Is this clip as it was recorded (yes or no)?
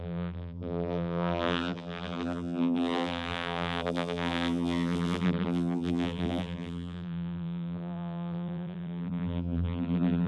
no